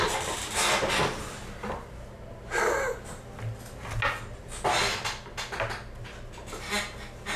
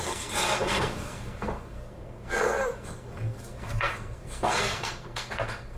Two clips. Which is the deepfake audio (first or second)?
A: second